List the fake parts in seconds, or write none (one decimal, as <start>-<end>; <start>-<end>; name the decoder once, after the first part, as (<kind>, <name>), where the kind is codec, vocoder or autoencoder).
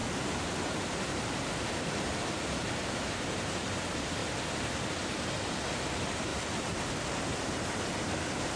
0.0-3.3 (vocoder, BigVGAN v2); 6.3-7.2